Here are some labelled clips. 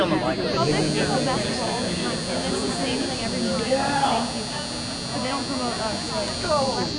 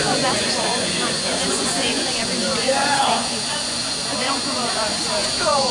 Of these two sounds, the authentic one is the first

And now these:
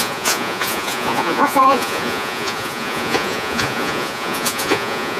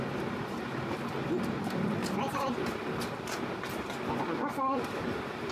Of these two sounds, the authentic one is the second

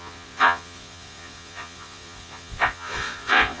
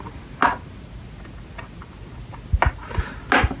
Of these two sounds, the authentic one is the second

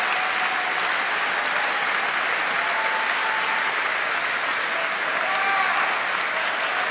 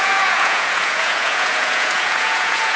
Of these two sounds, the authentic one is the first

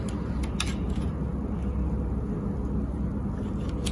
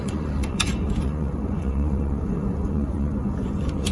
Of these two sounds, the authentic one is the first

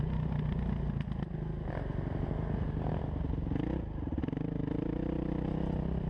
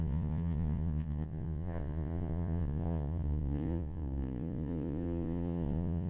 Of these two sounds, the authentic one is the first